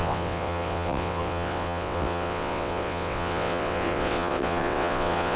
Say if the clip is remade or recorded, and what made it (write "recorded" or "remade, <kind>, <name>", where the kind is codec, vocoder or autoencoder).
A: remade, vocoder, WaveNeXt